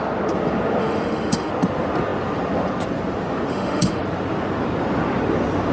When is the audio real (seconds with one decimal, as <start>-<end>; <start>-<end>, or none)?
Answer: 0.0-0.8; 1.5-3.5; 4.0-5.7